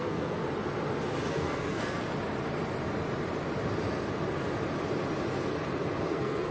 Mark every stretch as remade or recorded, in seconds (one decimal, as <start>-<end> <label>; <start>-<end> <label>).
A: 0.0-0.4 remade; 0.4-1.3 recorded; 1.3-2.1 remade; 2.1-6.0 recorded; 6.0-6.5 remade